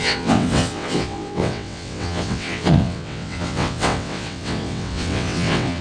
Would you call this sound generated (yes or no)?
yes